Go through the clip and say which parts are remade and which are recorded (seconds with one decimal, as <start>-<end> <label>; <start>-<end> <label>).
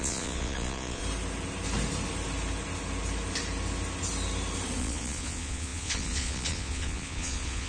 0.0-1.0 remade; 1.0-4.8 recorded; 4.8-7.7 remade